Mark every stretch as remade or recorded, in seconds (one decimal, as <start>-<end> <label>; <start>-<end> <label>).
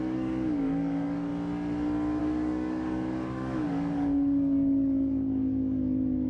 0.0-1.3 remade; 1.3-2.2 recorded; 2.2-6.3 remade